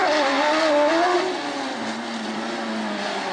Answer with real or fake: real